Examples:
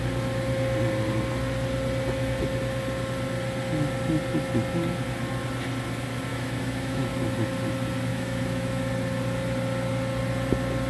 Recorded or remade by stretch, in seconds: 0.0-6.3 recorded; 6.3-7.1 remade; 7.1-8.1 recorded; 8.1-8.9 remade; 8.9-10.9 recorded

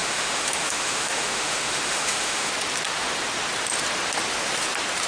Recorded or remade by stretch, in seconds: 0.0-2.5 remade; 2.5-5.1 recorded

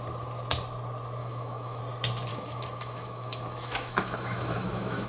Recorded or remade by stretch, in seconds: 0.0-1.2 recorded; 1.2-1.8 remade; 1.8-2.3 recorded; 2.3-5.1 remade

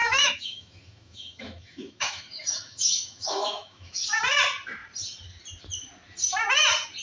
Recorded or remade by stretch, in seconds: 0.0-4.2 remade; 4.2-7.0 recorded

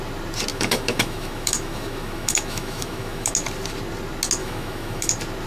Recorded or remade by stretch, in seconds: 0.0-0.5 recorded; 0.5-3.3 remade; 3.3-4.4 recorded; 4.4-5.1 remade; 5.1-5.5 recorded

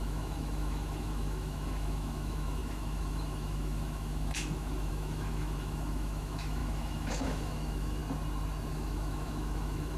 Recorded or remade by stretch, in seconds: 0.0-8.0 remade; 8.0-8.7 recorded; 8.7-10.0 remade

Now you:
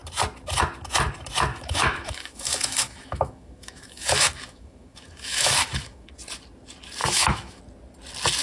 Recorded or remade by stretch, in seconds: 0.0-1.5 recorded; 1.5-6.1 remade; 6.1-7.0 recorded; 7.0-7.6 remade; 7.6-8.4 recorded

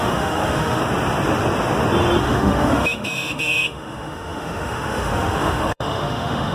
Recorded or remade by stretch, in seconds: 0.0-0.8 remade; 0.8-2.2 recorded; 2.2-6.5 remade